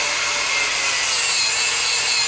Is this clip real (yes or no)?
yes